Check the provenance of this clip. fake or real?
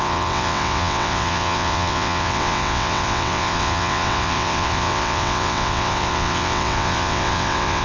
fake